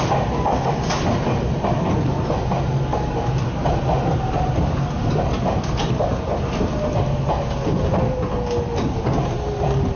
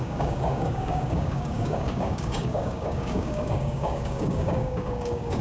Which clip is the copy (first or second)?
second